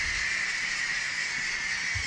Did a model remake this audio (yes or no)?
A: no